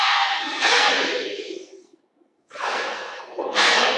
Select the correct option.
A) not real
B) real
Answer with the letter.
A